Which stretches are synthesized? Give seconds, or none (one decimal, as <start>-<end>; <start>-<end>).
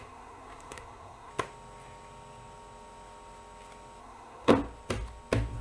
0.0-1.3; 4.0-4.5